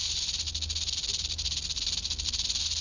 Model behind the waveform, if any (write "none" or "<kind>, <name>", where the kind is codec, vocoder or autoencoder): none